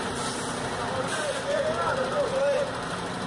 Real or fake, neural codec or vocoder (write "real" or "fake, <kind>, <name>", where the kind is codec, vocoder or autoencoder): fake, vocoder, BigVGAN v2